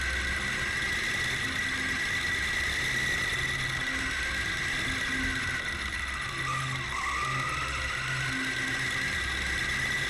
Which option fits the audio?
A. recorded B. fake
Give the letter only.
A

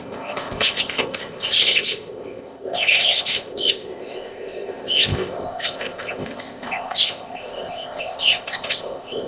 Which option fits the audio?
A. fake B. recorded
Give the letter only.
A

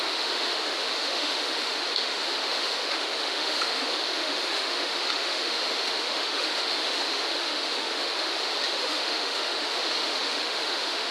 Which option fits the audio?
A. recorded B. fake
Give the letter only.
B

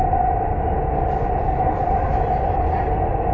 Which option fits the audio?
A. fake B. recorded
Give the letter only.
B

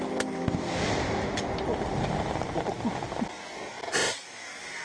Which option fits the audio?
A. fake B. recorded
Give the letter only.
B